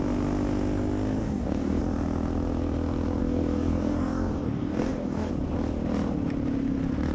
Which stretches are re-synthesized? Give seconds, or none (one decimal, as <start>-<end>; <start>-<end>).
1.2-1.8; 3.2-5.3